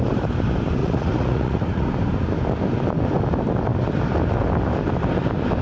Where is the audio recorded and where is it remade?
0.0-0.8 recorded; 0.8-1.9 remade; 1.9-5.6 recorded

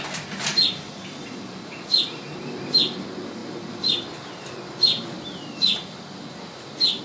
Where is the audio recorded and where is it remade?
0.0-1.6 recorded; 1.6-2.2 remade; 2.2-7.0 recorded

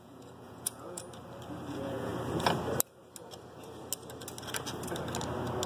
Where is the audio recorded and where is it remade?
0.0-1.0 remade; 1.0-1.7 recorded; 1.7-2.1 remade; 2.1-5.7 recorded

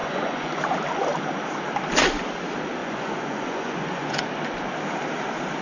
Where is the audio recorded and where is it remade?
0.0-0.6 remade; 0.6-2.8 recorded; 2.8-4.3 remade; 4.3-5.6 recorded

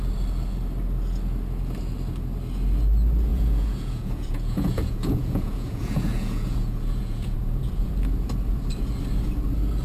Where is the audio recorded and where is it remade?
0.0-3.3 recorded; 3.3-7.9 remade; 7.9-9.8 recorded

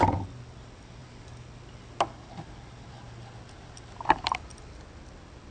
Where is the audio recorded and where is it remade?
0.0-5.5 recorded

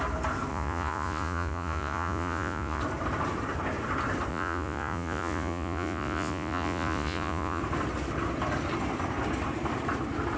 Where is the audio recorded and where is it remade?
0.0-0.5 recorded; 0.5-2.8 remade; 2.8-4.3 recorded; 4.3-7.6 remade; 7.6-10.4 recorded

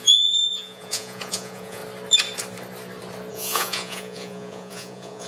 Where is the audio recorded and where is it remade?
0.0-1.8 remade; 1.8-3.3 recorded; 3.3-5.3 remade